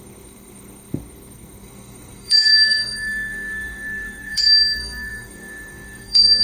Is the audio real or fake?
fake